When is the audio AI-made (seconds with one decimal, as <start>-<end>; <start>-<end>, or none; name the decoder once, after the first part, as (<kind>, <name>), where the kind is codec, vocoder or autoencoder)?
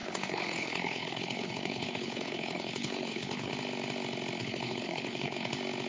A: 0.0-3.5 (codec, HILCodec); 4.4-5.5